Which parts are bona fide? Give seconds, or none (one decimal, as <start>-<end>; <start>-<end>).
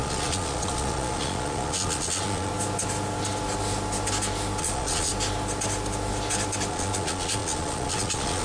2.5-4.6; 5.1-6.7